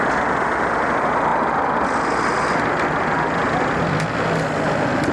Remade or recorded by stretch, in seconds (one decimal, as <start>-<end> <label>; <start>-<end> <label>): 0.0-5.1 recorded